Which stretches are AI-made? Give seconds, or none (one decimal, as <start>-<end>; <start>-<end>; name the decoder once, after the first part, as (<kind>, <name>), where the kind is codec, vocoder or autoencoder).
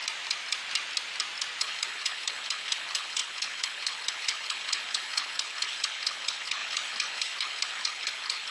1.6-8.5 (codec, HILCodec)